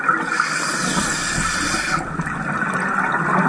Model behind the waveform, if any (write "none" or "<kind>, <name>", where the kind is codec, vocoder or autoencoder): none